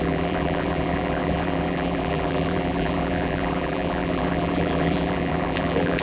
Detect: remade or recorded remade